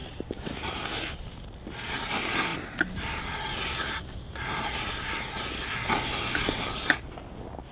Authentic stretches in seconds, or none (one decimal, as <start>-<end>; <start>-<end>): 0.8-2.5; 3.2-7.7